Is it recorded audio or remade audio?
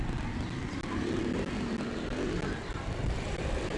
recorded